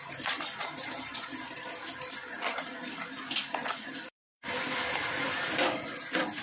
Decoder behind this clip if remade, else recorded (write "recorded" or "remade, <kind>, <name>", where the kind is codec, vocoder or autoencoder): remade, vocoder, BigVGAN v2